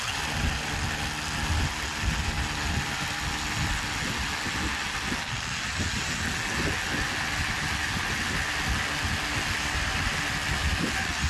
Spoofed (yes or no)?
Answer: no